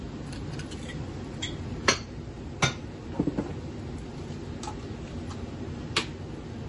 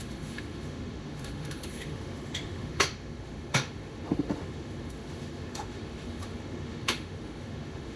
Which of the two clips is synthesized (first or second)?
second